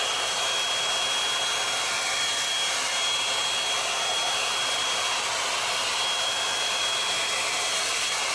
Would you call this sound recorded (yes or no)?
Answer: yes